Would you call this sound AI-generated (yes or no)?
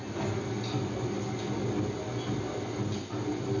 no